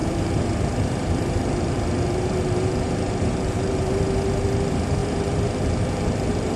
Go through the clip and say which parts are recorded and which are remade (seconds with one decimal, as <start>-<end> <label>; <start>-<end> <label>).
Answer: 0.0-4.0 remade; 4.0-5.0 recorded; 5.0-6.6 remade